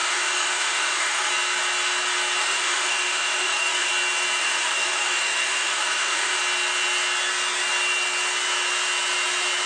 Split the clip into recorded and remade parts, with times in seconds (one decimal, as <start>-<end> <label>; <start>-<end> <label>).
0.0-1.3 remade; 1.3-2.4 recorded; 2.4-3.9 remade; 3.9-4.4 recorded; 4.4-6.4 remade; 6.4-9.7 recorded